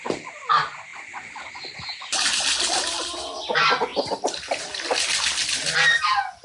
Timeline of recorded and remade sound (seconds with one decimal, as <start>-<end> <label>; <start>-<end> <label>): 0.0-6.4 recorded